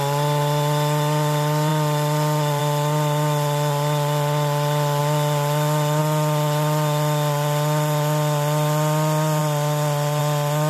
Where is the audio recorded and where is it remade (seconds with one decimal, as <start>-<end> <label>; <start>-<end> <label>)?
0.0-10.7 recorded